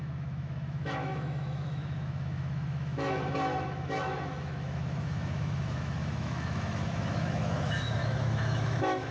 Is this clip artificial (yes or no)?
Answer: yes